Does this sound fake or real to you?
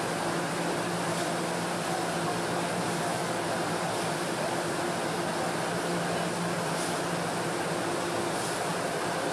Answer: real